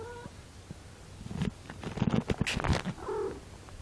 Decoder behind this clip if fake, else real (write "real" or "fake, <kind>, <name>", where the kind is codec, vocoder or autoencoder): real